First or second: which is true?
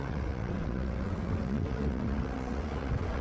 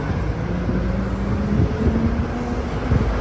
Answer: second